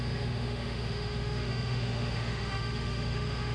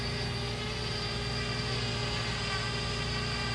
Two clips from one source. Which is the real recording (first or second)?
second